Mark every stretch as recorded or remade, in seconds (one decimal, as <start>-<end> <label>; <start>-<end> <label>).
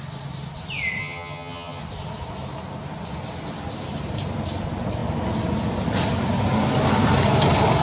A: 0.0-1.0 recorded; 1.0-1.8 remade; 1.8-7.8 recorded